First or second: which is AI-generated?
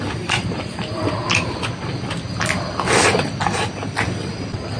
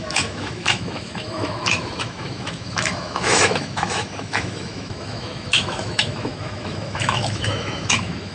second